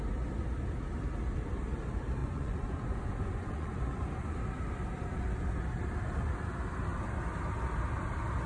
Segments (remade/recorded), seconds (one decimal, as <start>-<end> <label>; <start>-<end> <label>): 0.0-2.2 recorded; 2.2-3.8 remade; 3.8-8.5 recorded